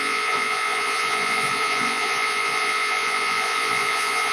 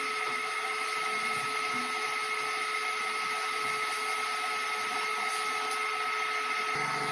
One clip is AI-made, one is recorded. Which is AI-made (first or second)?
first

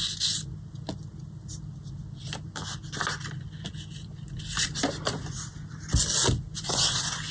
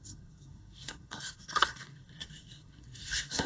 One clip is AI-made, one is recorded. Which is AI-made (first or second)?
second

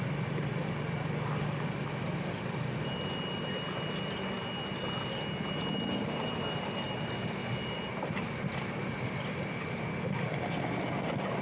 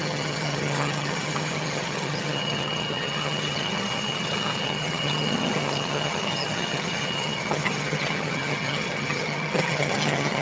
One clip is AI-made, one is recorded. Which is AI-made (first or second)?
second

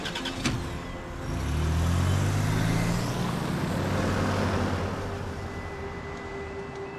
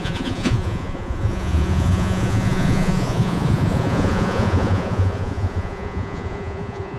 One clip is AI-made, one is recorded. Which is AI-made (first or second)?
second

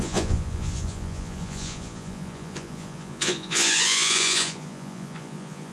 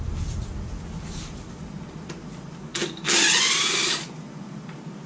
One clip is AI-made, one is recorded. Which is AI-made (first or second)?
first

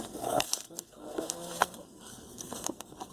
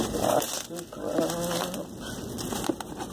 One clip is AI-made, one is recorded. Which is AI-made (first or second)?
first